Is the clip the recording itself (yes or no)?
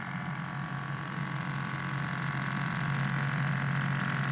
yes